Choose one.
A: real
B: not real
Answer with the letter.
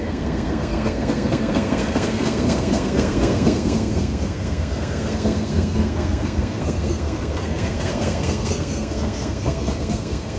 B